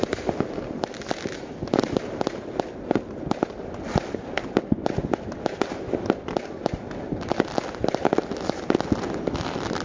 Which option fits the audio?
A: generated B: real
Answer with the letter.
B